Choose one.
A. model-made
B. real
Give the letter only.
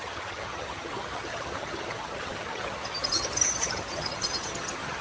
A